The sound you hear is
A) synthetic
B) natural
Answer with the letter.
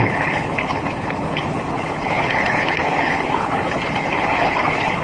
A